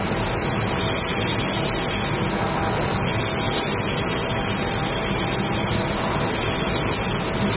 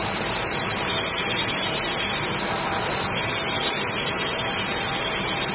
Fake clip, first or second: second